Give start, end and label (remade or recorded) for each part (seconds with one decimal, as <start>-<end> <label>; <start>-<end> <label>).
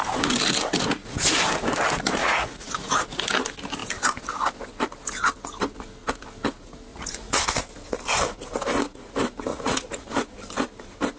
0.0-2.2 recorded; 2.2-2.9 remade; 2.9-6.9 recorded; 6.9-7.4 remade; 7.4-9.5 recorded; 9.5-10.1 remade; 10.1-11.2 recorded